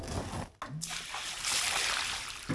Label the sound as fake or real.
real